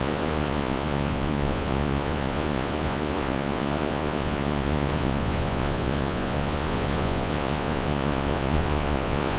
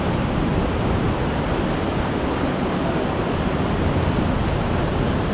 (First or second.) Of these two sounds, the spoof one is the first